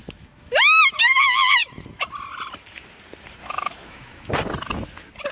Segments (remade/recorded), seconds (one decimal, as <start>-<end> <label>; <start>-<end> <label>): 0.0-0.8 remade; 0.8-1.6 recorded; 1.6-2.1 remade; 2.1-3.4 recorded; 3.4-4.3 remade; 4.3-5.3 recorded